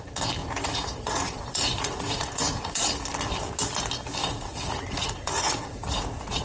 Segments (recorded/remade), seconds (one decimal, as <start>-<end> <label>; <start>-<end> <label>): 0.0-0.4 recorded; 0.4-2.8 remade; 2.8-4.2 recorded; 4.2-6.4 remade